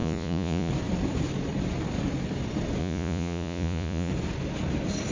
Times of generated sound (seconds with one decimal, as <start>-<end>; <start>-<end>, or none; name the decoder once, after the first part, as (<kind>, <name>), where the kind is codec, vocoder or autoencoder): 0.0-0.7 (vocoder, Vocos); 2.8-4.1